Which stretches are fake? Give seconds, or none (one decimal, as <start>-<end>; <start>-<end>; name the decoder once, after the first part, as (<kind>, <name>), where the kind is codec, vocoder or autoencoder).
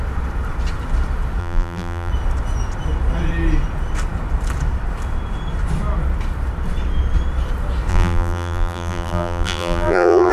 1.4-2.1 (vocoder, BigVGAN v2); 7.9-10.3